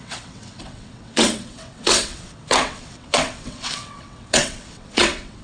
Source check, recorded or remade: remade